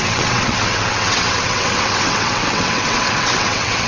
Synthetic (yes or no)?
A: yes